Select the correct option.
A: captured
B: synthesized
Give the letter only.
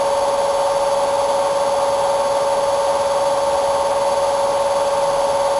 A